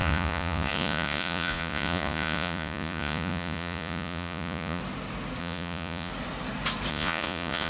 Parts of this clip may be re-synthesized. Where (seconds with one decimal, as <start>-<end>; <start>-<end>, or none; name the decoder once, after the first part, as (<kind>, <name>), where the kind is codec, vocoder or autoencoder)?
0.0-4.8 (vocoder, Vocos); 5.4-6.1; 6.9-7.7